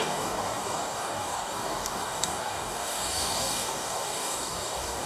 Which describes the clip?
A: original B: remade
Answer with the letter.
B